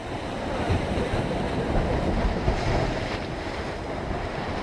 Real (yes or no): no